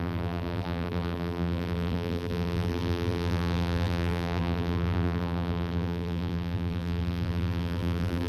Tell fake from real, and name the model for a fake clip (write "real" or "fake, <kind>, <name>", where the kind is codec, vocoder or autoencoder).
fake, vocoder, BigVGAN v2